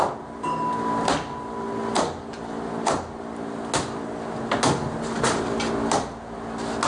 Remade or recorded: recorded